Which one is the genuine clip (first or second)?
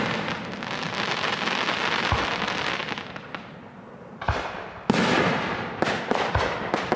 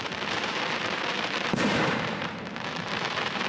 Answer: first